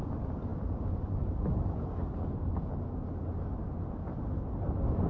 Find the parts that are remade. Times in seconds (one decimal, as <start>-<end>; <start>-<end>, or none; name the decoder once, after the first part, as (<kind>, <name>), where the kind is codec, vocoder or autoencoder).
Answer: none